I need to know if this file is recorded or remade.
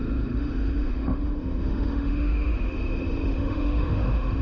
remade